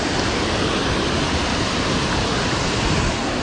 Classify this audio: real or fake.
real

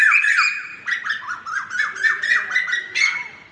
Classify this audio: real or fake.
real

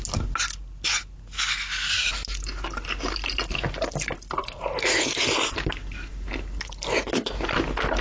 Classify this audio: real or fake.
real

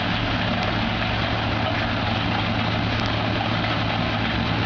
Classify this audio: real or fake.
real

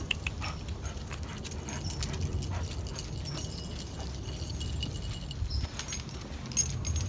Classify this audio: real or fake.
real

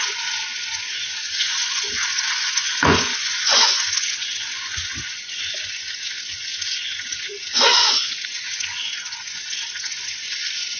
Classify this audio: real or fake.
fake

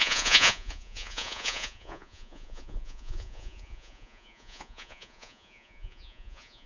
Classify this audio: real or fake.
fake